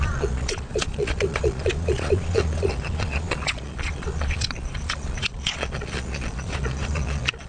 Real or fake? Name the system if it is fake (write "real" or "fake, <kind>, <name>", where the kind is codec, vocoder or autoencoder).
fake, vocoder, Vocos